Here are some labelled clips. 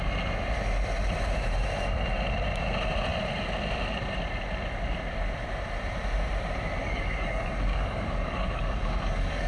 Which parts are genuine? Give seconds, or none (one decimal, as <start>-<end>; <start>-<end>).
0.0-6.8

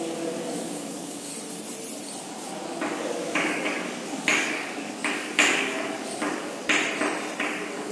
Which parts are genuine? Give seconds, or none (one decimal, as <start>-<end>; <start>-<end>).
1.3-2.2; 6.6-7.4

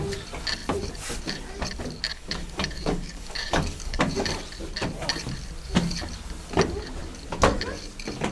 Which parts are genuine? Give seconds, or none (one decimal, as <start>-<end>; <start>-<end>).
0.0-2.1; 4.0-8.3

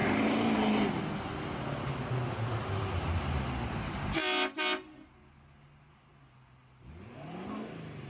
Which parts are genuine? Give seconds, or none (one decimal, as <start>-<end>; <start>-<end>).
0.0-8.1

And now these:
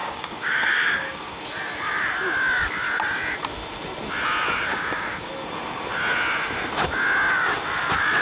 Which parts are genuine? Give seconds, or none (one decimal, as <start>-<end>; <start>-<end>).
1.4-4.7; 5.3-8.2

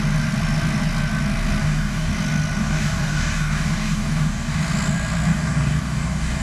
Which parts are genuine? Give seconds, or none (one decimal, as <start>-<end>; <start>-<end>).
0.0-1.6; 2.1-2.6; 4.6-5.3

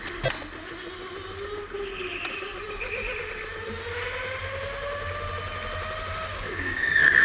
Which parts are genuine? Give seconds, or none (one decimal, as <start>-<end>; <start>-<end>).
0.0-6.3

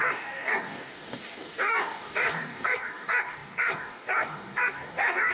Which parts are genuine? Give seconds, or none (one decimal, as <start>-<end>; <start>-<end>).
none